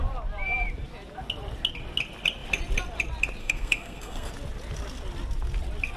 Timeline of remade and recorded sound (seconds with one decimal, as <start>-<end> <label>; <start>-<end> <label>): 0.0-3.4 recorded; 3.4-4.3 remade; 4.3-6.0 recorded